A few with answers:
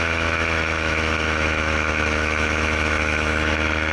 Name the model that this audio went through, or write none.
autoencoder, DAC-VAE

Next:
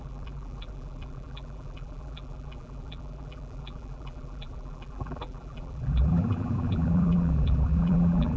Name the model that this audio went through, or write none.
vocoder, BigVGAN v2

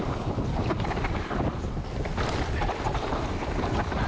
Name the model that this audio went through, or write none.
vocoder, BigVGAN v2